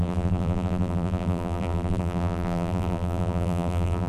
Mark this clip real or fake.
fake